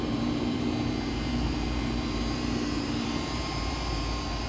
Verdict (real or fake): fake